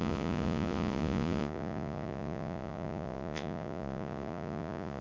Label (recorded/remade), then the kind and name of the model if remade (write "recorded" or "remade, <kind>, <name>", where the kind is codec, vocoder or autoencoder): remade, vocoder, Vocos